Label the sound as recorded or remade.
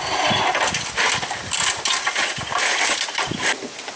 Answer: recorded